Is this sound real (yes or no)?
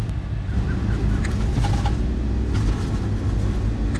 yes